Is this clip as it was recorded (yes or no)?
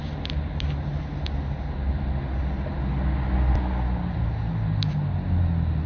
yes